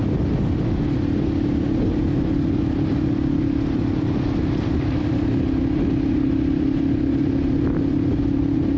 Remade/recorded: recorded